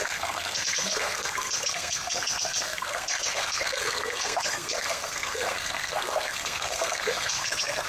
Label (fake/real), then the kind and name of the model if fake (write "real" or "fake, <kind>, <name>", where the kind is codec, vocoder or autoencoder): fake, codec, SNAC